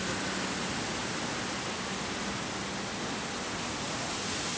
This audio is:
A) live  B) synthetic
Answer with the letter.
A